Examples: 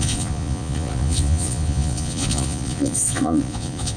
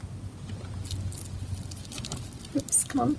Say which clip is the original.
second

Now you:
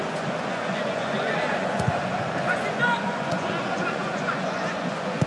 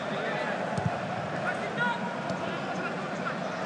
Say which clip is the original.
second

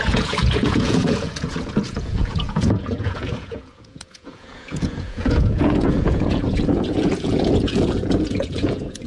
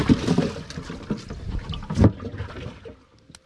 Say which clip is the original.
second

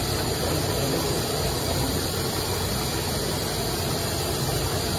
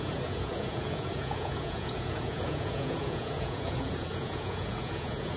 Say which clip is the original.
first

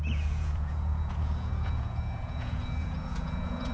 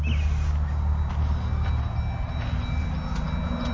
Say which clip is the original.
second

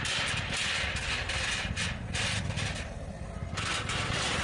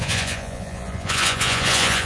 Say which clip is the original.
first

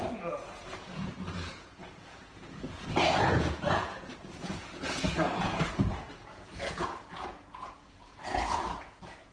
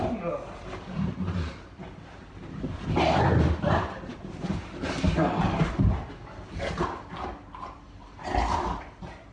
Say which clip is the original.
second